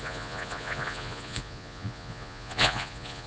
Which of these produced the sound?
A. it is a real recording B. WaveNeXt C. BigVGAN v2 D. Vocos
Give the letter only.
D